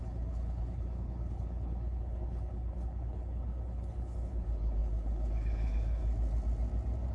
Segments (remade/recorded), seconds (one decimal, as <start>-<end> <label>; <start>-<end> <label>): 0.0-6.0 remade; 6.0-7.1 recorded